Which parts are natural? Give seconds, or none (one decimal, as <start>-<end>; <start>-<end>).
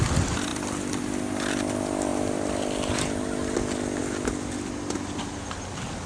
0.0-0.5; 1.0-2.1; 3.2-4.0; 5.2-6.1